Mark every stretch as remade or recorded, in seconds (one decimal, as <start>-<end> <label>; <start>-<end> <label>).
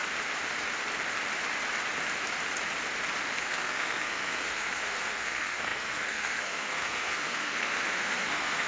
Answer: 0.0-3.4 recorded; 3.4-8.7 remade